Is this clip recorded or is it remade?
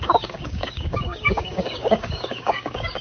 remade